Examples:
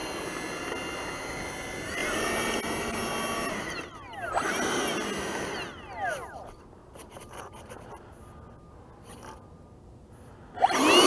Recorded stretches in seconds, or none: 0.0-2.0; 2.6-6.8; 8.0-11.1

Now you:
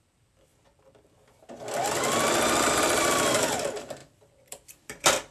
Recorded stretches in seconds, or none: 0.5-2.8

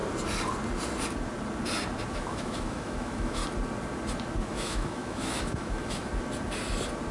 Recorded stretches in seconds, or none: 0.0-2.1; 3.4-4.4; 6.1-7.1

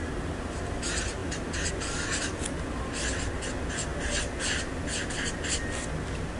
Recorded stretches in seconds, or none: 0.0-6.4

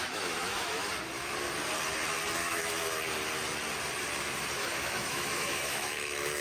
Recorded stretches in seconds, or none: 0.9-2.4; 3.0-4.6

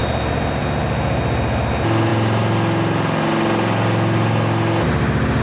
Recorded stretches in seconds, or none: 0.0-5.4

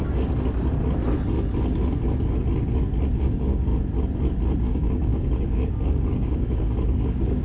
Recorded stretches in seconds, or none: 0.0-3.2; 3.7-4.6

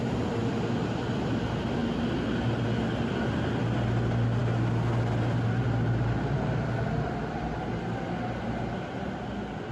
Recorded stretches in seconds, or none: 0.0-9.7